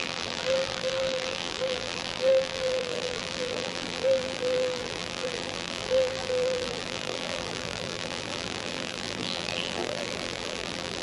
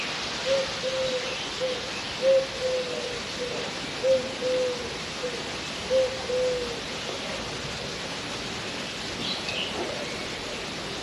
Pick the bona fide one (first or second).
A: second